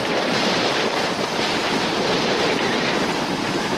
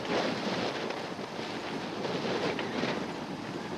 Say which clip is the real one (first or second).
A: second